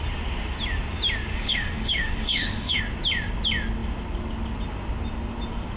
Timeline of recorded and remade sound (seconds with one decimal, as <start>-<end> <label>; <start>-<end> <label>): 0.0-1.3 recorded; 1.3-2.8 remade; 2.8-5.8 recorded